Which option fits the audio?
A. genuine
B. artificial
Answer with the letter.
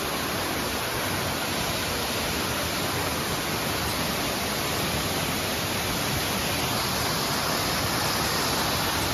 B